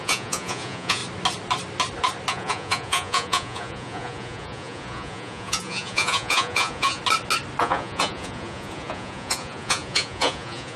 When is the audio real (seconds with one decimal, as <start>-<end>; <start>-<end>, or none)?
1.0-2.3; 7.0-7.6